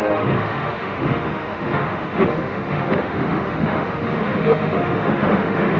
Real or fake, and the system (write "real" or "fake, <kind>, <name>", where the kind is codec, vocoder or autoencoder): fake, autoencoder, DAC-VAE